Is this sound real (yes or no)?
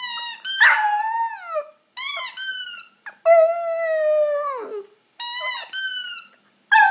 yes